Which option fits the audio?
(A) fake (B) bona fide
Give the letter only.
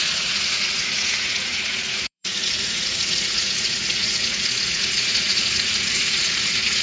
A